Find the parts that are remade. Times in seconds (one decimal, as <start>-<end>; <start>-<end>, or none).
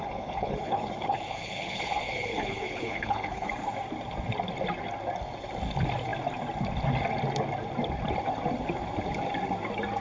0.0-3.5